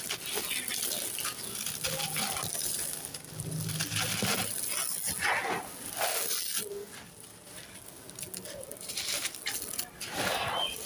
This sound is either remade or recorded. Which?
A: recorded